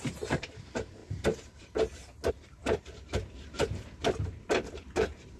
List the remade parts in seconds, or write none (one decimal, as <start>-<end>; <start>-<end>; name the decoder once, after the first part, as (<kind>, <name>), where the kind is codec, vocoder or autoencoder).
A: 0.0-1.0 (vocoder, BigVGAN v2); 2.3-5.4